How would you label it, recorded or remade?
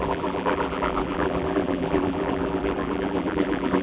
remade